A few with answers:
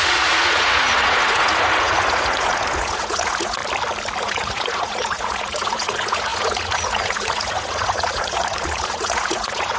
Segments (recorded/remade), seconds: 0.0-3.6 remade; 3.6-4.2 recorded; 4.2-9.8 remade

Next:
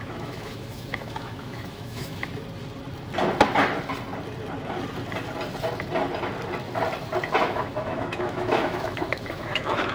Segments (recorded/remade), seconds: 0.0-2.3 remade; 2.3-7.4 recorded; 7.4-9.9 remade